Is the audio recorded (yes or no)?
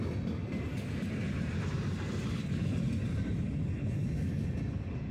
yes